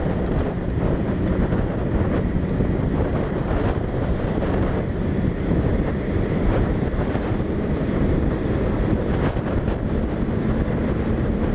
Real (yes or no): no